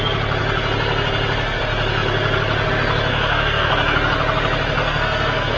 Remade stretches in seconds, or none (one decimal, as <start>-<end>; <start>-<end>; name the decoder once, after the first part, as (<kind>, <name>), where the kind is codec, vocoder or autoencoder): 3.1-3.7 (codec, SNAC); 4.8-5.6